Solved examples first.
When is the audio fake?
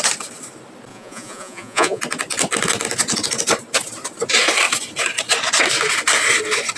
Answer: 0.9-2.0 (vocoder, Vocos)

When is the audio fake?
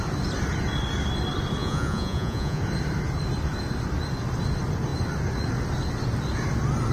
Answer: 1.6-2.6 (vocoder, Vocos)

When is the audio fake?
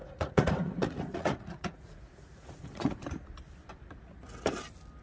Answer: 0.0-3.0 (vocoder, Vocos)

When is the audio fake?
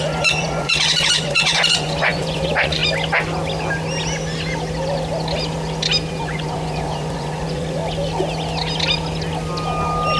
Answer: 0.0-2.8 (vocoder, Vocos); 6.1-7.8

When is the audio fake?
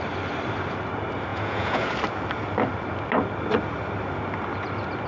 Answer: 1.3-1.9 (vocoder, Vocos)